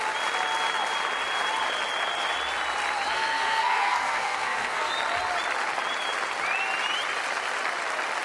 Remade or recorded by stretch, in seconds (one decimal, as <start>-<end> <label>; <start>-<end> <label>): 0.0-3.1 recorded; 3.1-4.9 remade; 4.9-8.2 recorded